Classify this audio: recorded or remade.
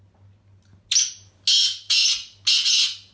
recorded